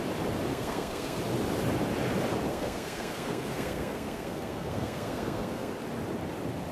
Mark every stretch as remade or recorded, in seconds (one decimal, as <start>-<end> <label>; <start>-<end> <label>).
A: 0.0-0.5 recorded; 0.5-1.2 remade; 1.2-2.5 recorded; 2.5-5.7 remade; 5.7-6.7 recorded